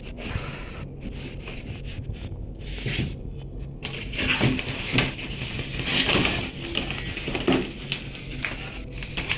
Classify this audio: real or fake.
real